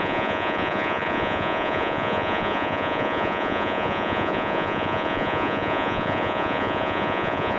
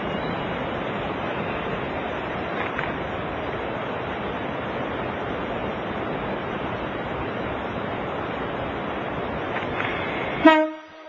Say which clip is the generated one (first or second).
first